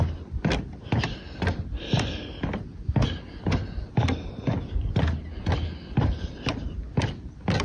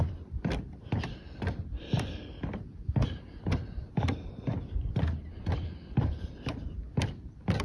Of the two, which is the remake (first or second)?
second